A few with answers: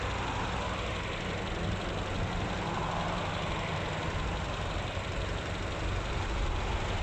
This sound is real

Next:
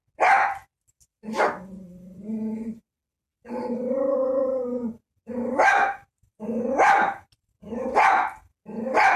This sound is real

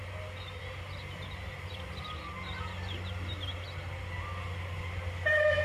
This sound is real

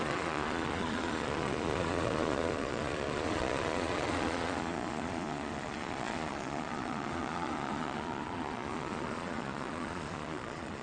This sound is fake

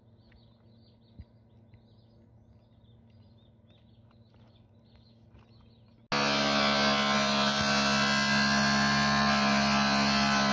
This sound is real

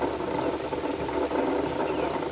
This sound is real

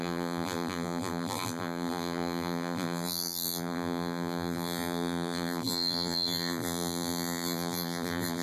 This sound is fake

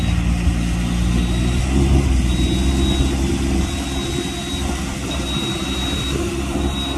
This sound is real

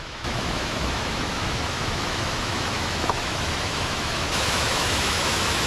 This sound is fake